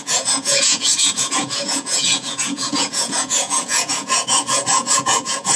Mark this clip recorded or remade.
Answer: remade